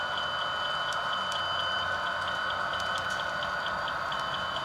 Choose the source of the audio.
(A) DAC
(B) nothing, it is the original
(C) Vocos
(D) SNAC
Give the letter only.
B